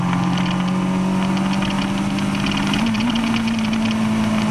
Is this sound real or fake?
real